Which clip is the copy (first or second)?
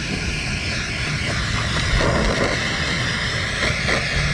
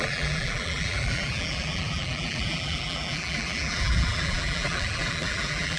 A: second